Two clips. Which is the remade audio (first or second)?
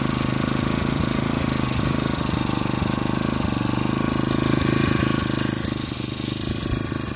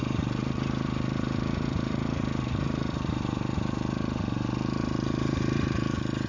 second